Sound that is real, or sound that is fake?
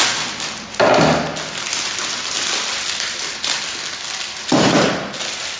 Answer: real